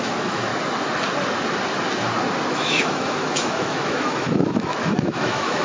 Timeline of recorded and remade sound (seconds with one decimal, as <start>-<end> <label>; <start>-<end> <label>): 0.0-0.5 remade; 0.5-2.5 recorded; 2.5-5.6 remade